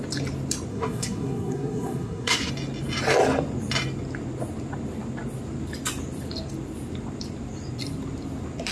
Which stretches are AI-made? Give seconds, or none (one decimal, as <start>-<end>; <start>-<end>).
0.7-2.5